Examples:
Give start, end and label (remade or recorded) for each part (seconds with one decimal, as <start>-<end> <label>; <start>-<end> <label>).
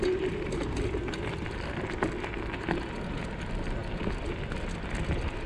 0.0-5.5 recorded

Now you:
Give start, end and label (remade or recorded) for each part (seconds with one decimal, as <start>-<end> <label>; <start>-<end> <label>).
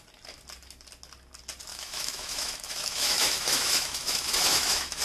0.0-1.7 recorded; 1.7-5.0 remade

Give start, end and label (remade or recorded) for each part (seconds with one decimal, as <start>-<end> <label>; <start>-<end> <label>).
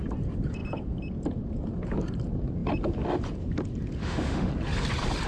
0.0-4.0 recorded; 4.0-4.5 remade; 4.5-5.3 recorded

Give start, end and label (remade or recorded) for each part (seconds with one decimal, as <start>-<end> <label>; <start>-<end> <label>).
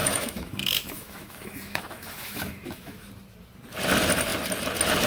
0.0-3.1 remade; 3.1-5.1 recorded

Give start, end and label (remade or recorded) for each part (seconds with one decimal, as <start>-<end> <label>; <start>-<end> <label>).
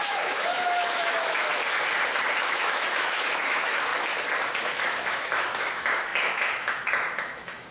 0.0-1.5 remade; 1.5-2.4 recorded; 2.4-3.9 remade; 3.9-4.6 recorded; 4.6-7.7 remade